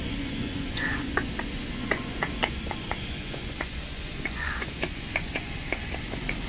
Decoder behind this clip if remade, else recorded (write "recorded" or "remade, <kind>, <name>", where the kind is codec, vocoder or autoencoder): remade, vocoder, Vocos